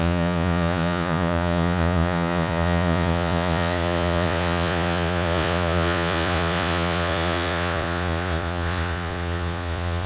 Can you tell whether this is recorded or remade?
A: remade